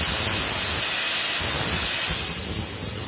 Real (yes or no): yes